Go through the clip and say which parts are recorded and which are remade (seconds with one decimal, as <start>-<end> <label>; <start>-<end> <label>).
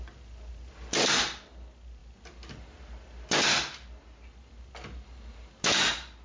0.0-6.2 recorded